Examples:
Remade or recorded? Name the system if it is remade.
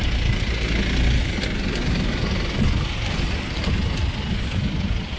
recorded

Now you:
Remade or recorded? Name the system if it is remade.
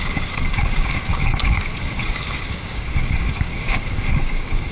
remade, codec, DAC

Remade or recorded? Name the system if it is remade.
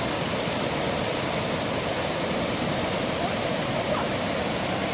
recorded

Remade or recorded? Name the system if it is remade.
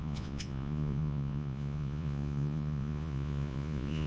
remade, vocoder, Vocos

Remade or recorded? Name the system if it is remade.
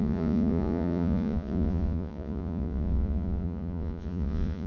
remade, vocoder, Vocos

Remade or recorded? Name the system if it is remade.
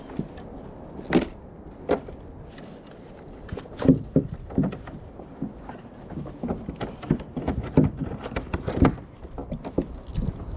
recorded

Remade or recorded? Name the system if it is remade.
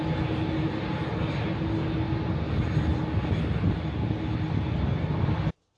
recorded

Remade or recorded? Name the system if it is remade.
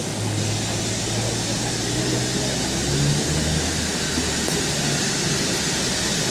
recorded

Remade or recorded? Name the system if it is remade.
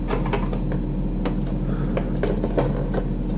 recorded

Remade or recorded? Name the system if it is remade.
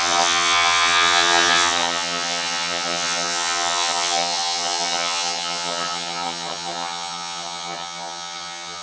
remade, vocoder, HiFi-GAN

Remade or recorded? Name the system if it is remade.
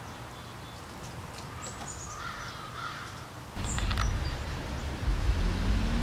recorded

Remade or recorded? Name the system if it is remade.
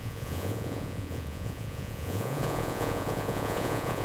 remade, vocoder, Vocos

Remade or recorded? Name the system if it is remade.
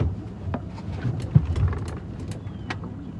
recorded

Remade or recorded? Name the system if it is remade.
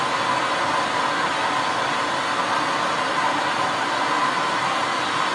recorded